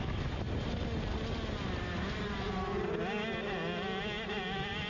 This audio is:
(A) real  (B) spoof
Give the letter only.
A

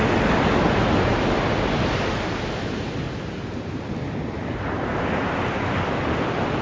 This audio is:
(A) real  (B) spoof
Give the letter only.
A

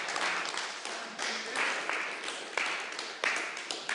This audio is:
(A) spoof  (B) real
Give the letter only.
B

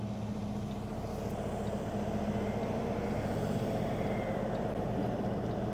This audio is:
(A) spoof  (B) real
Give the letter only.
B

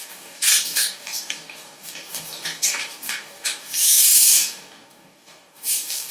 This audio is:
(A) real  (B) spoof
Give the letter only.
B